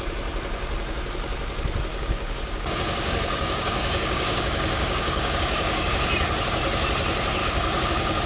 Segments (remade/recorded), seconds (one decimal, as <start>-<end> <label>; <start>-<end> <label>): 0.0-1.9 recorded; 1.9-6.1 remade; 6.1-7.4 recorded; 7.4-8.3 remade